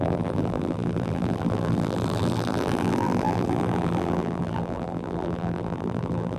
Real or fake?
fake